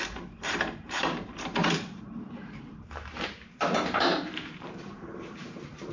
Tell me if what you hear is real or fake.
fake